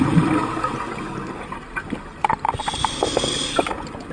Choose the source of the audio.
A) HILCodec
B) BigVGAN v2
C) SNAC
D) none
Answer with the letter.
D